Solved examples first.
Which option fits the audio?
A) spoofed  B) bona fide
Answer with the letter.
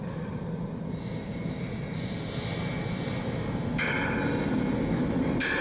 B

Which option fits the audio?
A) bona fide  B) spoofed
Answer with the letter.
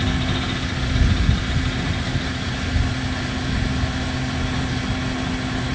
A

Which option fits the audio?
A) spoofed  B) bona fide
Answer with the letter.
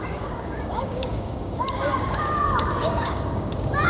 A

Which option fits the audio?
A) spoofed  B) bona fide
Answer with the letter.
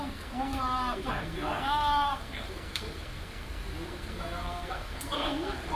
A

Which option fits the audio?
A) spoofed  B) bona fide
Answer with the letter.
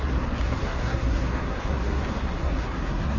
A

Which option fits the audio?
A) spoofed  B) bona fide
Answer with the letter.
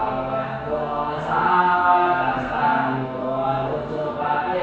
A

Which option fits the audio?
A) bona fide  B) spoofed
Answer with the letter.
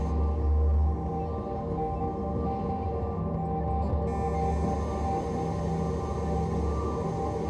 A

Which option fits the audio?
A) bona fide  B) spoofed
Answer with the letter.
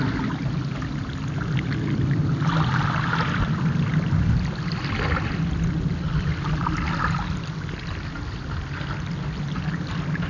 A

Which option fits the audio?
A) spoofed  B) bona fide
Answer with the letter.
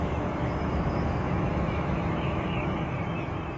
A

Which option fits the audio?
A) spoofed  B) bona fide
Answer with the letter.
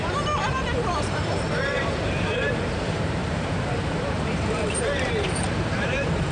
A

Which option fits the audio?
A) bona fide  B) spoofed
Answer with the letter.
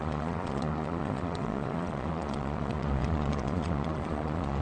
B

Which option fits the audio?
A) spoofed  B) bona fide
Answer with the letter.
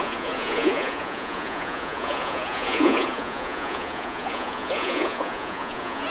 A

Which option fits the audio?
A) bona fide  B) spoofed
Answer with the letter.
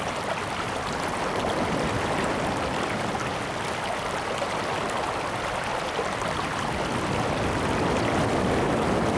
A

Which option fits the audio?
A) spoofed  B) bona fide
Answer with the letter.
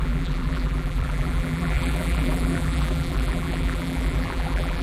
A